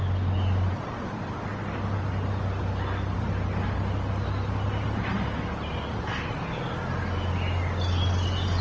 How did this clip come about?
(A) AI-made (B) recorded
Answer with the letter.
B